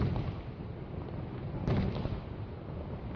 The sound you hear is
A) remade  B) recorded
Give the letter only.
B